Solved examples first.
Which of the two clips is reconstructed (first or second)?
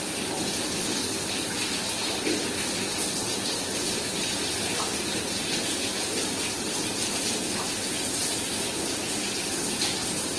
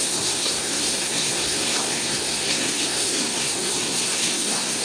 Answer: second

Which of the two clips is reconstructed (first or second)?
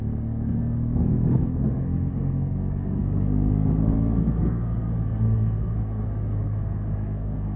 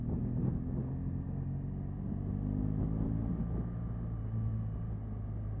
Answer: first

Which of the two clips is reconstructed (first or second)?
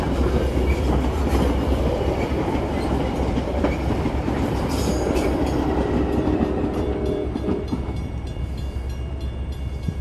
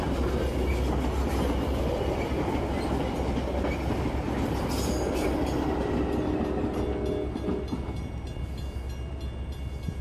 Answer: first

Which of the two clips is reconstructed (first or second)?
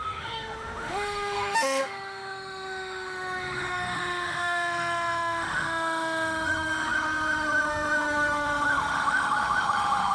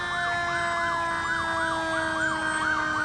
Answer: first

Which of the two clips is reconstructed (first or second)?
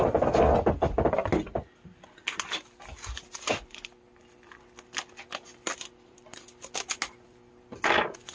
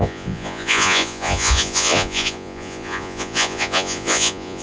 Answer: second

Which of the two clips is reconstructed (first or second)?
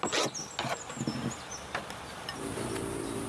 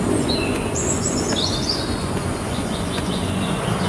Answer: second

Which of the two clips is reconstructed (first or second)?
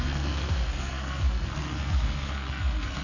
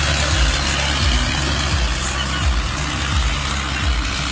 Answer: first